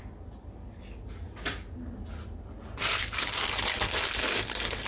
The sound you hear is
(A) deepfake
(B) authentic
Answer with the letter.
B